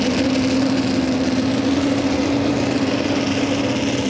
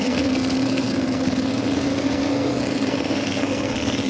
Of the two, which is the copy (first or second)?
second